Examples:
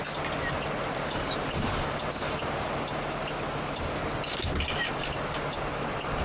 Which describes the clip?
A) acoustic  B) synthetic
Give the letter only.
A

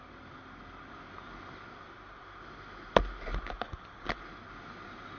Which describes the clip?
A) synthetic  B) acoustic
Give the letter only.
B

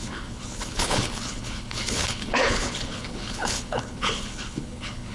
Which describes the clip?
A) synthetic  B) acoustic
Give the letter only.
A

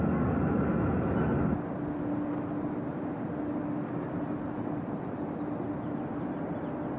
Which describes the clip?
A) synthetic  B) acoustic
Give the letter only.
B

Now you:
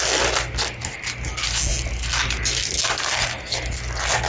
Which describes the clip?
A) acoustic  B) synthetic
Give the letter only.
A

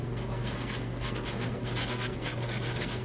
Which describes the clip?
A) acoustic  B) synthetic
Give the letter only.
B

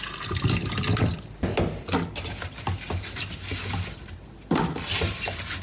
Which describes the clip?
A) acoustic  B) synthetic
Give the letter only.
A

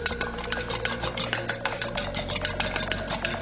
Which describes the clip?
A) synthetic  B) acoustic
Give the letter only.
B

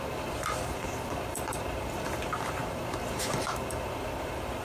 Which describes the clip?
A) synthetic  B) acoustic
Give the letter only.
A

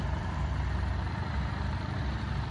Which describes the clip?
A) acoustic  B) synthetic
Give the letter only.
B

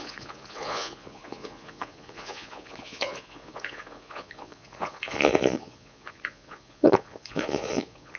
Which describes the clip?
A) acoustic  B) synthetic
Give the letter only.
B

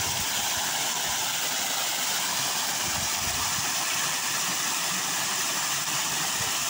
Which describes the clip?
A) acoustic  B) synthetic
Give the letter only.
A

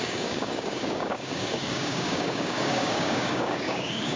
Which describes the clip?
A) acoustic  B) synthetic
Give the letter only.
B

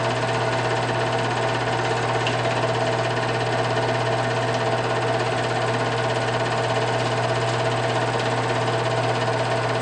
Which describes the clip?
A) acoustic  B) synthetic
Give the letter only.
A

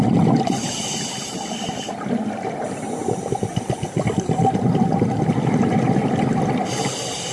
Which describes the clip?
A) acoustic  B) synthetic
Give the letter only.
A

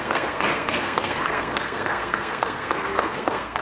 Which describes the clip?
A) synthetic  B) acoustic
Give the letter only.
A